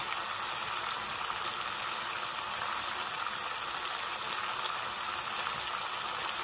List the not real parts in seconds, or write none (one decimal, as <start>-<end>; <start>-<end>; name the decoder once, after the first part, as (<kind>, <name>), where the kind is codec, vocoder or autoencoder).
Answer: none